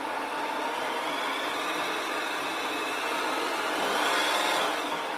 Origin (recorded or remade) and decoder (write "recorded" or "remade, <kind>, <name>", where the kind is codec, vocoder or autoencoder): recorded